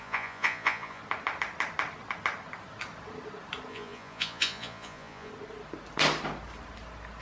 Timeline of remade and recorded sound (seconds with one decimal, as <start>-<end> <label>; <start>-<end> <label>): 0.0-1.0 remade; 1.0-3.7 recorded; 3.7-5.3 remade; 5.3-7.2 recorded